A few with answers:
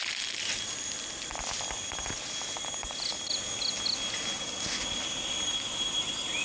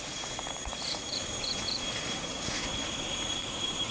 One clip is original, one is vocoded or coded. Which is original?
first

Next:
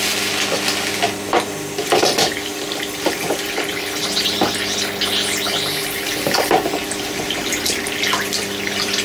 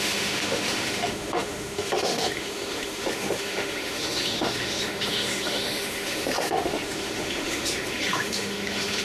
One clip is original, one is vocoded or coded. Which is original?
first